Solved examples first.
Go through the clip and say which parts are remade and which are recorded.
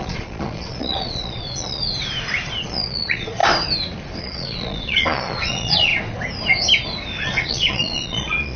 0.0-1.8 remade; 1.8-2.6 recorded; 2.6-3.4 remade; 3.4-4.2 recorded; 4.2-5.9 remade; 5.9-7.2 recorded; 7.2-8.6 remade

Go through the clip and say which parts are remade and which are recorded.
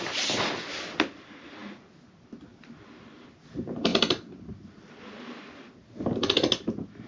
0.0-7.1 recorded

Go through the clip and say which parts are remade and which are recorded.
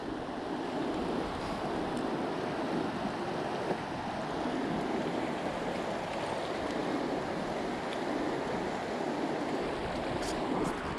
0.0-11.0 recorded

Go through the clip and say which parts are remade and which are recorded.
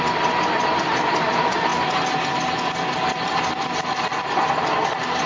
0.0-5.3 recorded